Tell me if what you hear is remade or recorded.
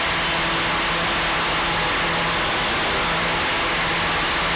recorded